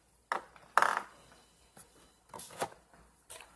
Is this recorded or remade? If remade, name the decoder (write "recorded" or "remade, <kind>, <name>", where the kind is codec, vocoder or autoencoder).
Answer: recorded